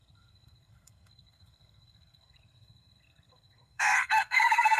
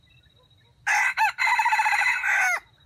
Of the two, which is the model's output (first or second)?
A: first